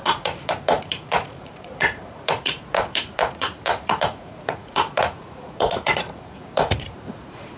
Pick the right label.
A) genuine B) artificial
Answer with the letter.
B